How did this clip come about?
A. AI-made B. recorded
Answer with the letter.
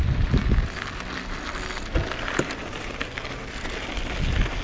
B